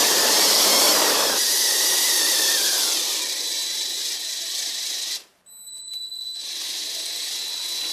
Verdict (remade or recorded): remade